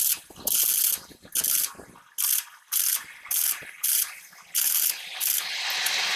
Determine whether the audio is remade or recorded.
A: recorded